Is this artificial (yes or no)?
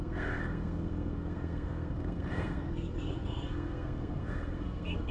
yes